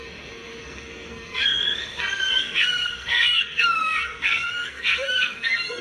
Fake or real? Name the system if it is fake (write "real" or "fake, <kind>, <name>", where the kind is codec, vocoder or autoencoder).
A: fake, codec, SNAC